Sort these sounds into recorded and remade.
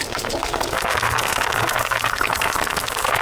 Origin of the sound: remade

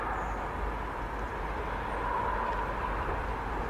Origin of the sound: recorded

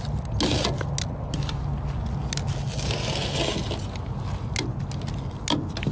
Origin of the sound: recorded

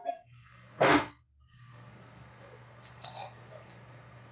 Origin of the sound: remade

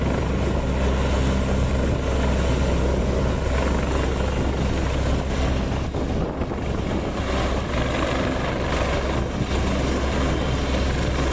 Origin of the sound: recorded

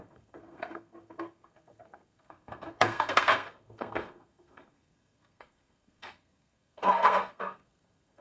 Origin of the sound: remade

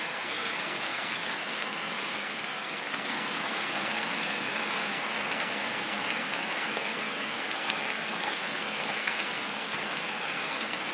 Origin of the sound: remade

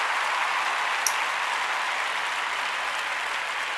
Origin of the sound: recorded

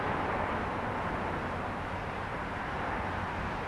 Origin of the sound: recorded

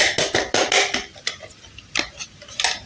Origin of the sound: recorded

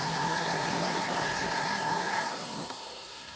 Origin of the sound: remade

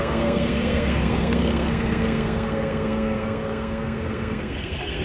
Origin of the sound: remade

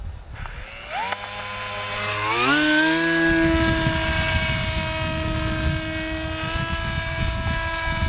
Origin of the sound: recorded